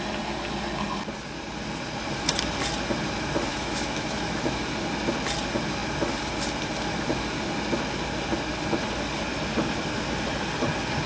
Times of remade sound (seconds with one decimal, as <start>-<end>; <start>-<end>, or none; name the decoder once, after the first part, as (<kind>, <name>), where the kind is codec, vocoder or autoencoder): 3.5-4.6 (autoencoder, DAC-VAE)